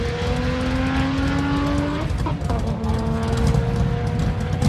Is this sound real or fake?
real